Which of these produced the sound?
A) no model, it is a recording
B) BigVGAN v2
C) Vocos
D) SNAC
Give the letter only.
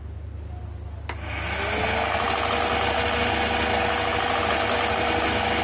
A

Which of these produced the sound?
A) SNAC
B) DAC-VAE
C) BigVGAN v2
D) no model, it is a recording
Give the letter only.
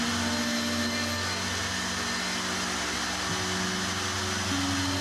D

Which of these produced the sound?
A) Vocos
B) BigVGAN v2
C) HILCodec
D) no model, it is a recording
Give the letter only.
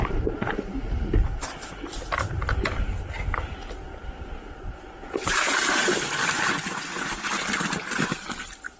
D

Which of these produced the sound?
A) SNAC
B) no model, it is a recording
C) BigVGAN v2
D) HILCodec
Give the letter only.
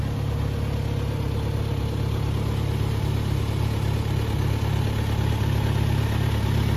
B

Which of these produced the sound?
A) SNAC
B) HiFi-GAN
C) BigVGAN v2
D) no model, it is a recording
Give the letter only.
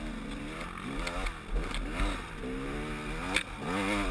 D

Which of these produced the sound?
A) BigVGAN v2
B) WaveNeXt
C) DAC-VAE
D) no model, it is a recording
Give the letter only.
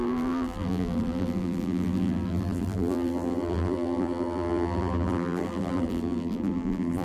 A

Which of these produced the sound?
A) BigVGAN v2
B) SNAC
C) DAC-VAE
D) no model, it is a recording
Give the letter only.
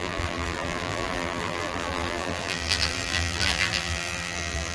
A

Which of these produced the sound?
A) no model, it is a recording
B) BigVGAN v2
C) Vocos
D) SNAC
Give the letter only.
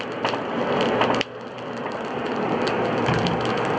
B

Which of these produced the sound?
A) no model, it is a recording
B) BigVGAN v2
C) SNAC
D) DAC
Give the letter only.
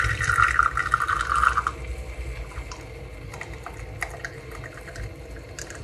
A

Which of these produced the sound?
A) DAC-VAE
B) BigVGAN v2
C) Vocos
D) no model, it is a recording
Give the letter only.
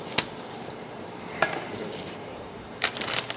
B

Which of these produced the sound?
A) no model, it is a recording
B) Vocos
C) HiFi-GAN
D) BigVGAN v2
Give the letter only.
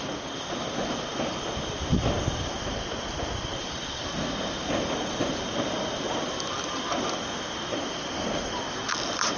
A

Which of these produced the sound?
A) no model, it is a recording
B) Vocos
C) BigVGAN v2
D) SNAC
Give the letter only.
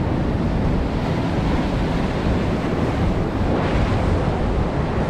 A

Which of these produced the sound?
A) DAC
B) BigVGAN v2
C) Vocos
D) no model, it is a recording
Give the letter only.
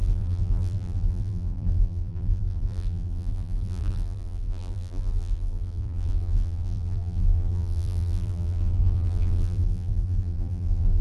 B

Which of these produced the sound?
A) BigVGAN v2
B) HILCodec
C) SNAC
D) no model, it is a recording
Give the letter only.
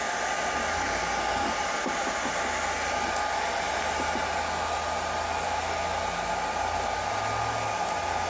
D